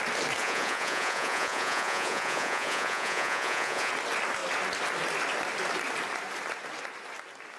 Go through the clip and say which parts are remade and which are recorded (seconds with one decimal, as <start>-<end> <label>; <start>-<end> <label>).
0.0-0.4 recorded; 0.4-3.9 remade; 3.9-7.6 recorded